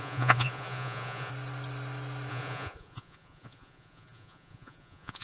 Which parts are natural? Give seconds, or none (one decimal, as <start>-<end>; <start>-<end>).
1.3-2.3